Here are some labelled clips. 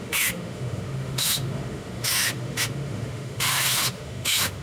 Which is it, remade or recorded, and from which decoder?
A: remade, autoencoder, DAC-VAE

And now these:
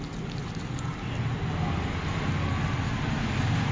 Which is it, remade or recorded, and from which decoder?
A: recorded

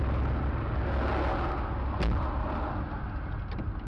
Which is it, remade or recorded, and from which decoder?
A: recorded